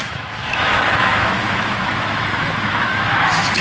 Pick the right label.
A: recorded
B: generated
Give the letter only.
B